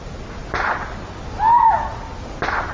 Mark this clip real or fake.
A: real